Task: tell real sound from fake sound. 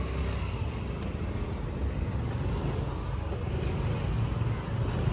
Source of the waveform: real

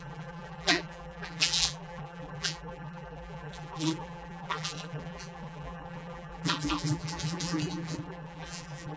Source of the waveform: fake